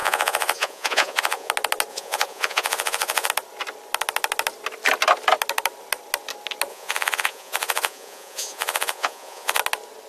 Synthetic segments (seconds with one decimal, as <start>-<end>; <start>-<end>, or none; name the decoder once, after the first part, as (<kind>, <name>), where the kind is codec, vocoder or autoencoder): 0.0-1.5 (vocoder, Vocos); 1.9-3.3; 6.7-9.6